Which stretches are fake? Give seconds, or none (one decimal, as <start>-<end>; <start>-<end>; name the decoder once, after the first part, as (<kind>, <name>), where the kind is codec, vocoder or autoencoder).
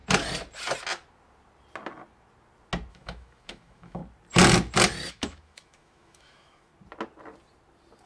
2.9-4.0 (autoencoder, DAC-VAE); 5.1-6.7